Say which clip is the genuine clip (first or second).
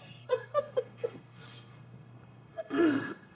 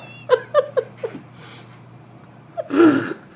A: second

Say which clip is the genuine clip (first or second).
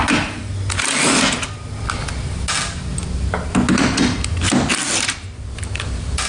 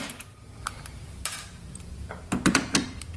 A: first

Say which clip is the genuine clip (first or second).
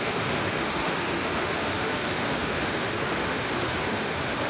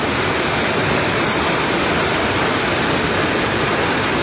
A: second